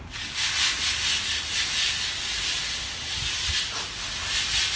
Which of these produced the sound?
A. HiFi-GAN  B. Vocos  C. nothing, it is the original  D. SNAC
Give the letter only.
C